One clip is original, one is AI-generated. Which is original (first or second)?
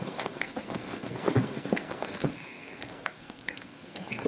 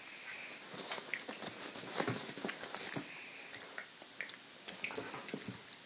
second